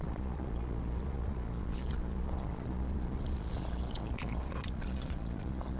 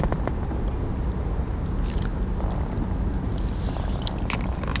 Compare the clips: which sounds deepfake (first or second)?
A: first